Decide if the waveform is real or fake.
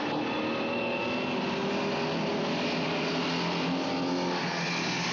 real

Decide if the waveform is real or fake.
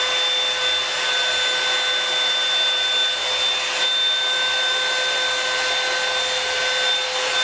real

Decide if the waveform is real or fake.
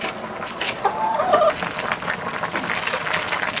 real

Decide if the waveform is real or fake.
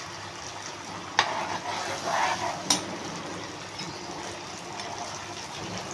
real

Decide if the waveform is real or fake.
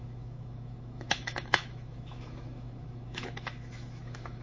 fake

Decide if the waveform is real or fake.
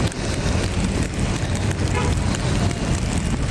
real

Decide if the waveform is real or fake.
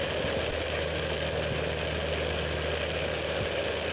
real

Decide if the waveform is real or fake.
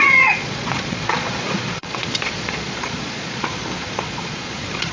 fake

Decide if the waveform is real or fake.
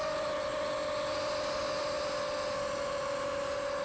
real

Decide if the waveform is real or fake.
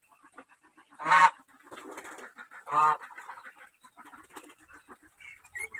real